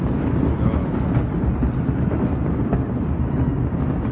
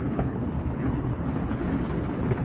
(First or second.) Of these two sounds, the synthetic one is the second